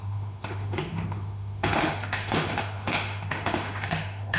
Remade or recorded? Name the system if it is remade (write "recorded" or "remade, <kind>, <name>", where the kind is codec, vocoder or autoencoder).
remade, autoencoder, DAC-VAE